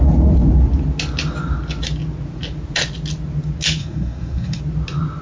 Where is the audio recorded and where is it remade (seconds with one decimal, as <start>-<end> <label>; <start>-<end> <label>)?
0.0-3.8 recorded; 3.8-4.6 remade; 4.6-5.2 recorded